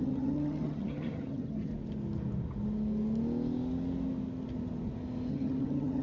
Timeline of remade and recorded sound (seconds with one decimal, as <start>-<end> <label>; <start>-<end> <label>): 0.0-1.7 remade; 1.7-5.3 recorded; 5.3-6.0 remade